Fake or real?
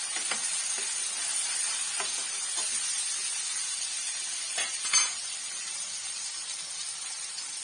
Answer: real